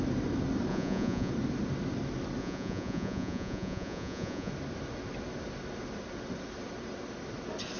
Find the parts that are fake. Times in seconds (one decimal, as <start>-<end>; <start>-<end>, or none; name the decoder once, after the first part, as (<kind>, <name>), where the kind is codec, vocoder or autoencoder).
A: 0.7-1.3 (vocoder, Vocos); 2.4-4.5